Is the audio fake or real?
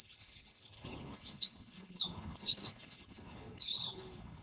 fake